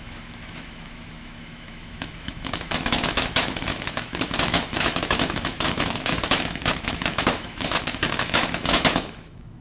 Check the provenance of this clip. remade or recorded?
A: remade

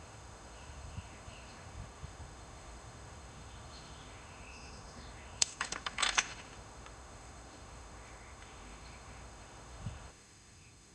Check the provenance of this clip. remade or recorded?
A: remade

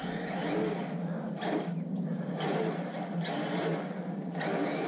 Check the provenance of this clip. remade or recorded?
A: recorded